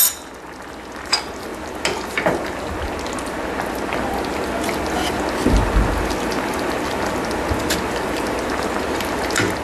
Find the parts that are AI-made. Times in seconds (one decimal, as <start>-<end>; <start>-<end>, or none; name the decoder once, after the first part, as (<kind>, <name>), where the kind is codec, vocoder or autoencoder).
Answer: none